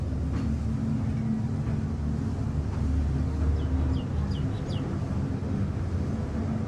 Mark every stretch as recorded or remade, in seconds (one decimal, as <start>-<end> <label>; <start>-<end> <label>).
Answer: 0.0-6.7 recorded